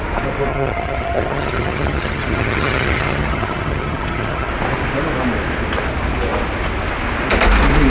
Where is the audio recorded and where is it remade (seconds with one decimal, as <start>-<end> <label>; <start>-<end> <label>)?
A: 0.0-0.5 recorded; 0.5-4.5 remade; 4.5-7.9 recorded